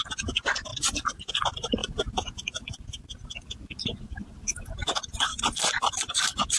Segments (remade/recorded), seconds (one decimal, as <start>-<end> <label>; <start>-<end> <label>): 0.0-0.7 recorded; 0.7-1.3 remade; 1.3-5.3 recorded; 5.3-5.9 remade; 5.9-6.6 recorded